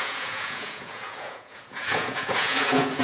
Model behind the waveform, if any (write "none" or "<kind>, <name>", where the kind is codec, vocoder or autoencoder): vocoder, Vocos